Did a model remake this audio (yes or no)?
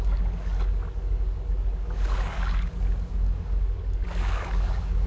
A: yes